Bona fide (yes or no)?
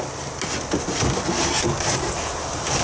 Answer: yes